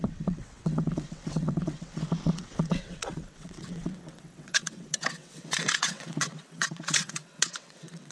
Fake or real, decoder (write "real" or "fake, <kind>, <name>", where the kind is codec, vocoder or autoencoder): fake, vocoder, WaveNeXt